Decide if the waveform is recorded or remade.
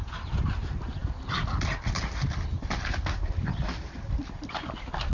recorded